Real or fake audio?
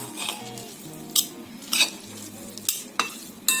real